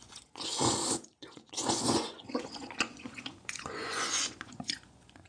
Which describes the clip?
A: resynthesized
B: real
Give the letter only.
A